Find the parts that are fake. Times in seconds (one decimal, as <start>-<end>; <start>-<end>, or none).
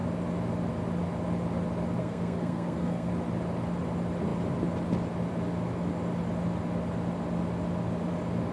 2.0-3.1